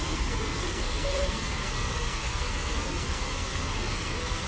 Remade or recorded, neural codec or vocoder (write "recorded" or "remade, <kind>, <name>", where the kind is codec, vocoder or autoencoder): remade, codec, SNAC